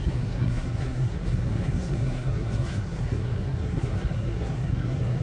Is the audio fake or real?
fake